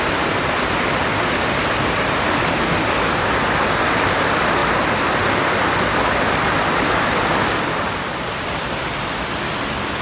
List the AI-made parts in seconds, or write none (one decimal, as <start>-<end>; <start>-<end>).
none